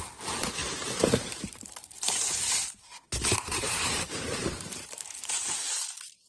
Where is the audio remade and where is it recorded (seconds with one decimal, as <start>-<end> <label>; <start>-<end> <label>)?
0.0-0.6 recorded; 0.6-2.6 remade; 2.6-3.5 recorded; 3.5-5.8 remade; 5.8-6.3 recorded